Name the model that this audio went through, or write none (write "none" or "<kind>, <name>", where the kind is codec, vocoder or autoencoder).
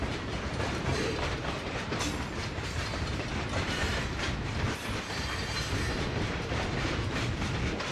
vocoder, BigVGAN v2